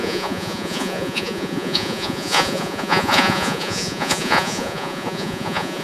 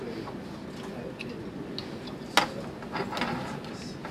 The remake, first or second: first